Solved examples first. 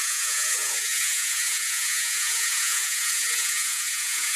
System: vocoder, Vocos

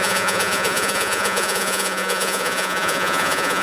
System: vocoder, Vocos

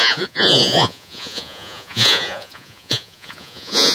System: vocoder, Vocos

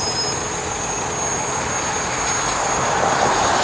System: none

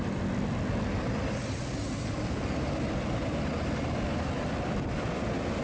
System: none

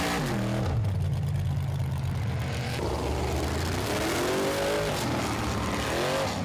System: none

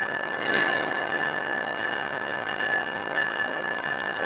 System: vocoder, HiFi-GAN